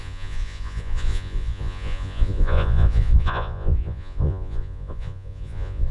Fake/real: fake